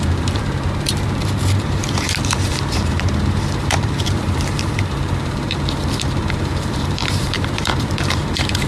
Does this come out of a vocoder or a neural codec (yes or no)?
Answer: yes